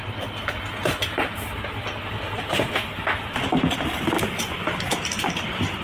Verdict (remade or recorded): recorded